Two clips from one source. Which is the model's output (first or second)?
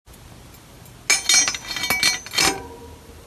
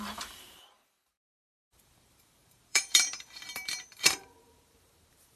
second